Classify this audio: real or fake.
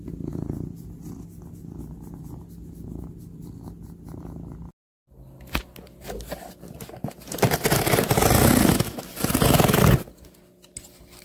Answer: real